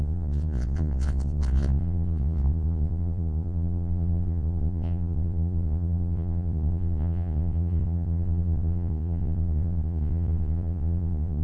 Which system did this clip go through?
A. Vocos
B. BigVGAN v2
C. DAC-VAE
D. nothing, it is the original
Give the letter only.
A